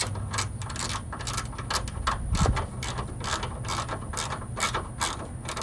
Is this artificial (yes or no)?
no